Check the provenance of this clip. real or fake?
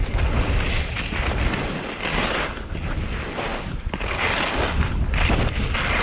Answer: real